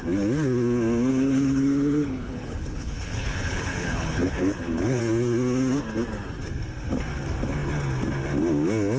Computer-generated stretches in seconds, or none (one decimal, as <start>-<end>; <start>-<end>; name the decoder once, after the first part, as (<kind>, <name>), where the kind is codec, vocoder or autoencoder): 1.1-5.0 (codec, HILCodec)